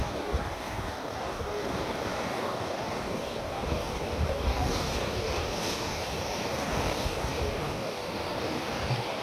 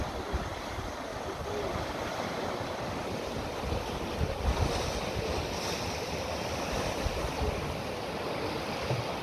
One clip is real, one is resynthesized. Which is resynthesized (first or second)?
first